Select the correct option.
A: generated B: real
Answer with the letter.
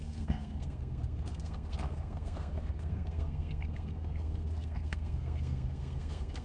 A